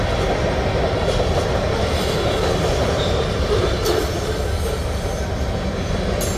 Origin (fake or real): real